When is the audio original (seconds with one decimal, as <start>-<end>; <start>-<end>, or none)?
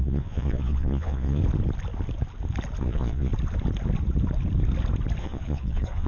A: 1.4-2.8; 3.3-5.2